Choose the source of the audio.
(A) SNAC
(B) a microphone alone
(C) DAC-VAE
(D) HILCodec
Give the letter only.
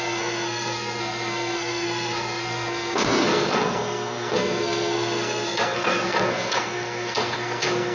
A